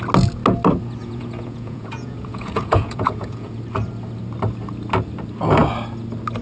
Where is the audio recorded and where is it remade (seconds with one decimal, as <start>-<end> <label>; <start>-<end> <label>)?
0.0-1.0 recorded; 1.0-3.6 remade; 3.6-6.4 recorded